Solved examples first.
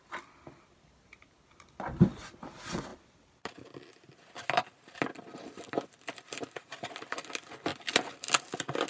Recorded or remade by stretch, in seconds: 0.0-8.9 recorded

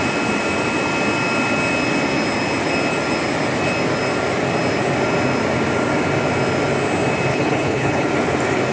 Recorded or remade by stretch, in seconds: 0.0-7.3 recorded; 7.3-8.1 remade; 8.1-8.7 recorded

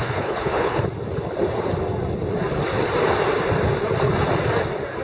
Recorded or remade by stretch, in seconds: 0.0-0.8 remade; 0.8-5.0 recorded

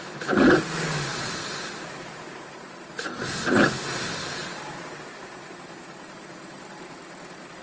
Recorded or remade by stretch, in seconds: 0.0-7.6 recorded

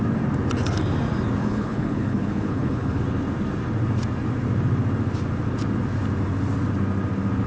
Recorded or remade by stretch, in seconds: 0.0-1.4 recorded; 1.4-3.0 remade; 3.0-7.5 recorded

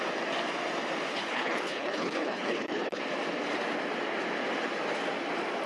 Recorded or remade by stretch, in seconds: 0.0-1.1 recorded; 1.1-3.0 remade; 3.0-5.7 recorded

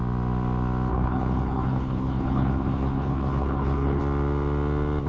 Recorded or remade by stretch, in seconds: 0.0-0.9 recorded; 0.9-4.0 remade; 4.0-5.1 recorded

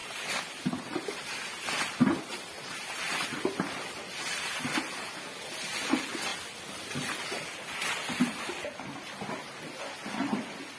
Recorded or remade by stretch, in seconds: 0.0-10.8 recorded